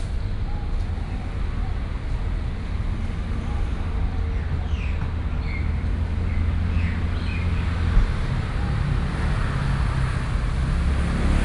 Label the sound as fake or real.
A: real